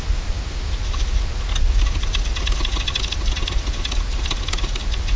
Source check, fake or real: real